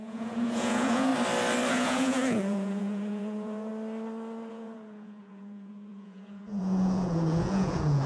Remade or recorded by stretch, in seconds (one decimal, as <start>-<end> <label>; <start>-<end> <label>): 0.0-1.1 remade; 1.1-1.7 recorded; 1.7-3.7 remade; 3.7-4.5 recorded; 4.5-8.1 remade